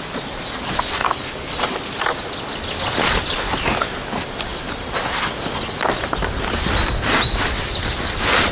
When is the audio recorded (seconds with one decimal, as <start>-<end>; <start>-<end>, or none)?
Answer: 0.0-8.5

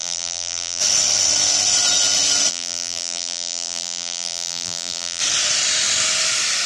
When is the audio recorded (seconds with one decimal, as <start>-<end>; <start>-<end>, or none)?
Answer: 0.8-2.5; 5.2-6.7

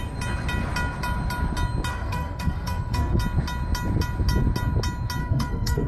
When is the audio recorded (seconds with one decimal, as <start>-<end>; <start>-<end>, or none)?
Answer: 0.0-1.9; 3.2-5.2

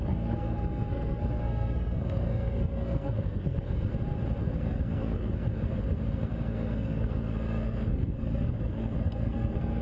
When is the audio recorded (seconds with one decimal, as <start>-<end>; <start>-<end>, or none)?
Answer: 3.9-4.4

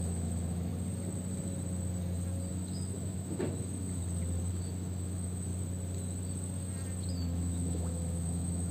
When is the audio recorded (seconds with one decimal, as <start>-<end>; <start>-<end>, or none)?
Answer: 0.7-2.5; 4.0-4.5; 5.5-7.1

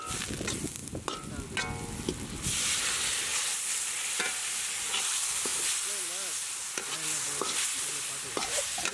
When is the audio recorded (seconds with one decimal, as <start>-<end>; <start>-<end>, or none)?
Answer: 0.0-8.9

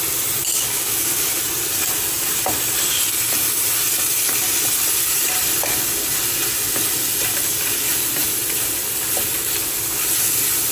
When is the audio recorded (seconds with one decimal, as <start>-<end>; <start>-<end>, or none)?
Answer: 0.0-0.4; 1.4-10.7

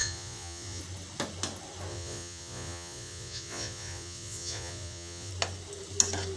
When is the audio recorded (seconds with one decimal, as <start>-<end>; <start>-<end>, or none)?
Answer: 0.8-1.9; 5.3-6.4